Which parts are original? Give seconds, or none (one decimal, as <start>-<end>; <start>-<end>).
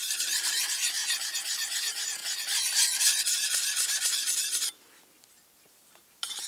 1.0-1.8; 2.2-5.7